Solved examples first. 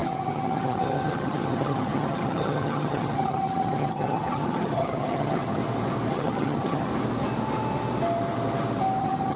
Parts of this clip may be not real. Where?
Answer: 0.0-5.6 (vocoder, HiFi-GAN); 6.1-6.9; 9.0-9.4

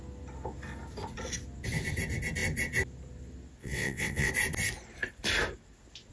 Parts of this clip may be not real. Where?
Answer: 3.6-4.3 (vocoder, WaveNeXt)

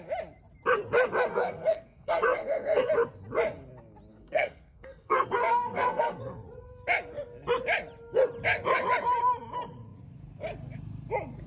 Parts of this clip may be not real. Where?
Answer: 1.3-2.9 (codec, SNAC); 4.1-6.2

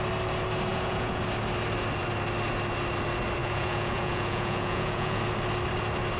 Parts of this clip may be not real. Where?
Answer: 0.7-1.2 (vocoder, Vocos); 3.4-5.2

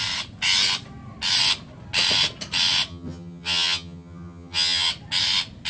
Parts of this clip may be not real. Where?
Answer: 2.9-4.9 (vocoder, HiFi-GAN)